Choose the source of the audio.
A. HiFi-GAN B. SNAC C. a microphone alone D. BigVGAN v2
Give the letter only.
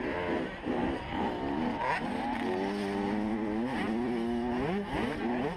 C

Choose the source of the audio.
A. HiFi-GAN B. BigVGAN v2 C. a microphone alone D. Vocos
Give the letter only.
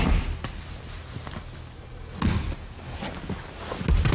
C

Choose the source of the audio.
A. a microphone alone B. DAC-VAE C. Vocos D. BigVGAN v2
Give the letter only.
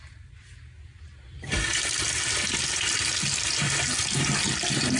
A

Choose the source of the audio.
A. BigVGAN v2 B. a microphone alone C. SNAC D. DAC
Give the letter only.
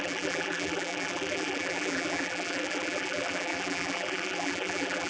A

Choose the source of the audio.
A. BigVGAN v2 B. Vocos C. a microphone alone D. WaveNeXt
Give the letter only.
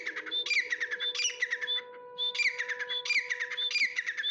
C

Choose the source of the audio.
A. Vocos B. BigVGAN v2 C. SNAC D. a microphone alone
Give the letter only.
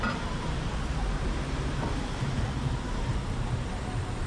D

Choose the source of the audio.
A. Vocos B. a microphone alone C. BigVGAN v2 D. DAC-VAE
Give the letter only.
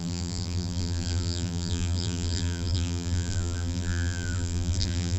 C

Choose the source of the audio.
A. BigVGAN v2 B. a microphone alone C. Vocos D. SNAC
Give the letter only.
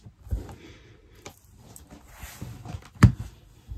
B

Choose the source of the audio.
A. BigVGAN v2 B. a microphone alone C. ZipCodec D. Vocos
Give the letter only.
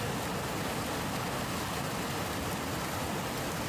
B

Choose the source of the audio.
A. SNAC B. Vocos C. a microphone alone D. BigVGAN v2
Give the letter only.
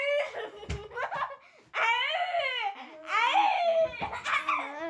C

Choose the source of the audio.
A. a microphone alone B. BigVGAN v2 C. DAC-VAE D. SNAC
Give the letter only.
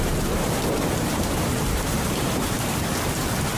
B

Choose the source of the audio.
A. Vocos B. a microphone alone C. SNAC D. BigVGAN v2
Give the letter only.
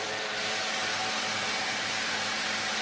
D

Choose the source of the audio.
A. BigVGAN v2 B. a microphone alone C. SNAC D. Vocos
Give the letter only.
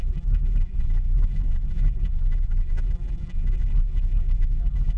A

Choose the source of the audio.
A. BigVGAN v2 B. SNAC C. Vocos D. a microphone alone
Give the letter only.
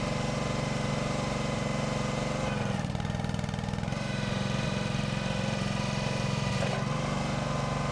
A